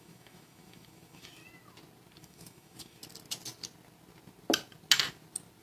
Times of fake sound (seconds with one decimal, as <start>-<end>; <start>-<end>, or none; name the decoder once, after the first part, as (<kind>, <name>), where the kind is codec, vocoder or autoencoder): 0.0-1.4 (autoencoder, DAC-VAE); 2.2-3.0